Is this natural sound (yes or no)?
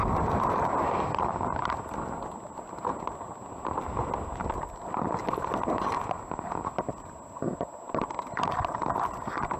yes